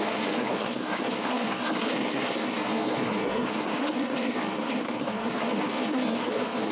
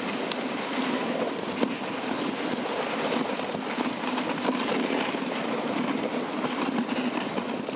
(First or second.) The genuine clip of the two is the second